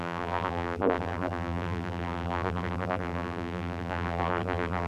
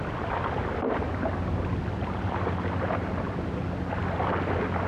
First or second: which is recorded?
second